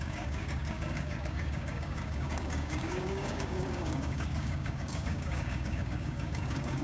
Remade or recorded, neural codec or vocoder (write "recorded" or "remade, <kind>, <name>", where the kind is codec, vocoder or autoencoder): remade, codec, DAC